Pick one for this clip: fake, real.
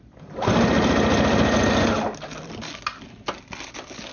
real